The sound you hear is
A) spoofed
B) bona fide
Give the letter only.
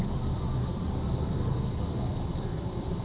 B